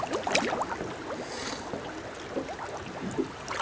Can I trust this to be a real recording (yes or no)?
yes